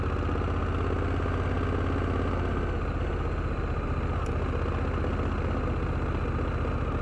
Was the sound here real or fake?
real